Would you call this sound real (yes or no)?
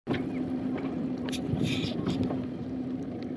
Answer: yes